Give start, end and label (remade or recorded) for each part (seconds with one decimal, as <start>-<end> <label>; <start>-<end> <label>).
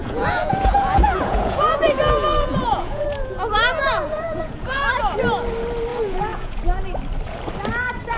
0.0-4.9 remade; 4.9-5.9 recorded; 5.9-6.6 remade; 6.6-8.2 recorded